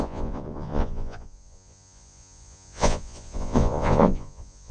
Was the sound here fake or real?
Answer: fake